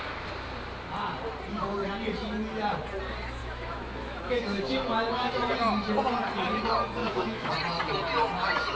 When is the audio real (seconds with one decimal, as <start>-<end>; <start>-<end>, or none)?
0.0-3.4; 5.3-7.0; 7.5-8.7